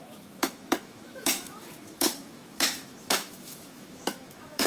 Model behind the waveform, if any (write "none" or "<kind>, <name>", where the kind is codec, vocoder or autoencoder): autoencoder, DAC-VAE